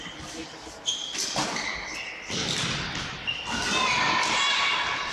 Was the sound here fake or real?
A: real